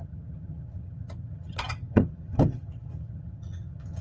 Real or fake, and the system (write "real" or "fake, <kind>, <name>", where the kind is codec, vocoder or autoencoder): fake, vocoder, HiFi-GAN